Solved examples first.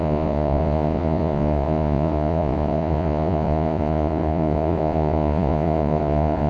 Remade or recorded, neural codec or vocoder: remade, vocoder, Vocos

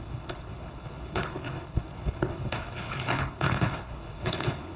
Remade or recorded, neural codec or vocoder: remade, codec, HILCodec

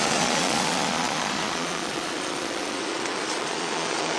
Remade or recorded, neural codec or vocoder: remade, vocoder, Vocos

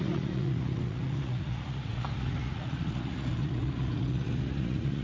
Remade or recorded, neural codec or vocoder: remade, vocoder, Vocos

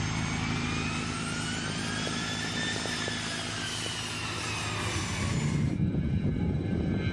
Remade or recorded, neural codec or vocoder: recorded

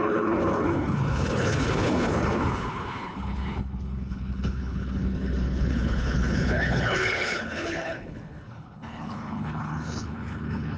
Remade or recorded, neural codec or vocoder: remade, codec, HILCodec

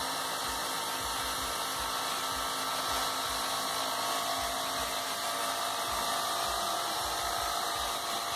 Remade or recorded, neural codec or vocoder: recorded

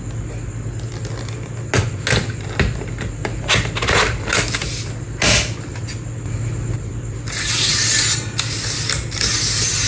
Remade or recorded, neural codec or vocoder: recorded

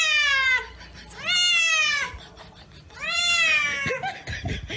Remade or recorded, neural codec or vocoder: recorded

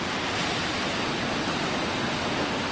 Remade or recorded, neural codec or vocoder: recorded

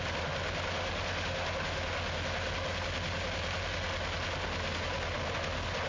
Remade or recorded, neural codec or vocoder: recorded